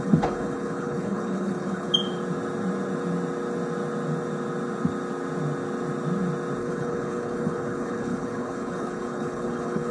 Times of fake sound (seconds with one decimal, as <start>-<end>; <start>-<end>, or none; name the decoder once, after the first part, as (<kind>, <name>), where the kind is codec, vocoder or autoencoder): 0.0-1.9 (codec, HILCodec); 6.6-9.9